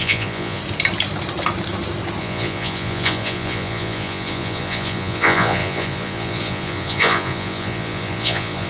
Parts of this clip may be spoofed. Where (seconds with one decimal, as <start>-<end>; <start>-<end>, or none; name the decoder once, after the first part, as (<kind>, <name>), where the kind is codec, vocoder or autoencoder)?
0.0-0.6 (vocoder, Vocos); 2.2-8.7